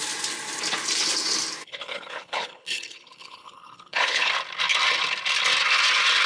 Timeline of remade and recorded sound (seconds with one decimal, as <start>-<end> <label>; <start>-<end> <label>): 0.0-1.6 recorded; 1.6-4.3 remade; 4.3-6.3 recorded